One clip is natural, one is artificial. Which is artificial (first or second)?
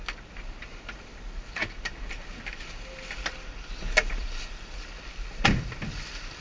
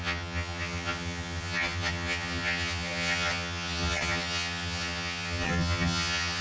second